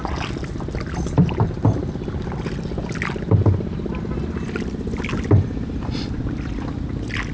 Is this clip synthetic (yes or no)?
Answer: no